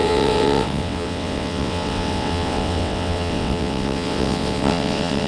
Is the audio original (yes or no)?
no